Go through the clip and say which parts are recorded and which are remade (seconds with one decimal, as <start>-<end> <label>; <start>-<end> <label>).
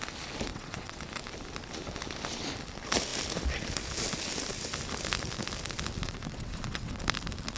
0.0-0.5 recorded; 0.5-1.0 remade; 1.0-6.0 recorded; 6.0-7.0 remade; 7.0-7.6 recorded